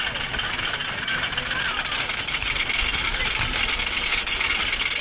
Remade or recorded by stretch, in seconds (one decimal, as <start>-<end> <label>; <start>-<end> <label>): 0.0-4.1 recorded; 4.1-4.6 remade; 4.6-5.0 recorded